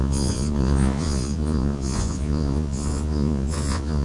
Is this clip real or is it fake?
fake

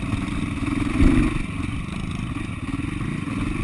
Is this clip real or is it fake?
real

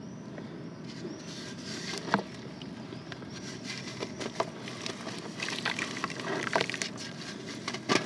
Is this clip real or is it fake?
real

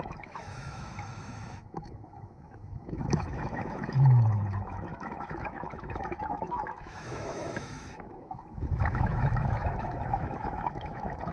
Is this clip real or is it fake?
fake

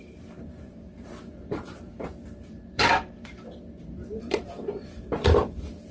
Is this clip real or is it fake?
fake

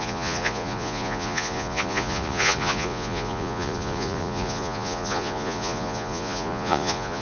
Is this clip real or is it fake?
fake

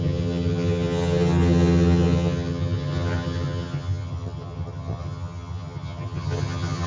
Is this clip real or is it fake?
fake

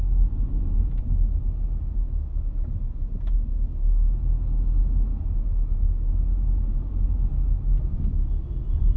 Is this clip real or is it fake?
real